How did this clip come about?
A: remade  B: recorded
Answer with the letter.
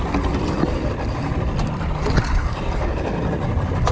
B